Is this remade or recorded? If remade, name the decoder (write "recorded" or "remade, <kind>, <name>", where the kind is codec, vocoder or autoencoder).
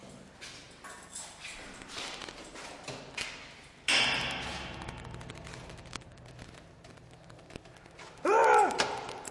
recorded